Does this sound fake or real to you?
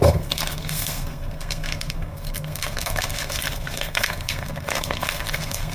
fake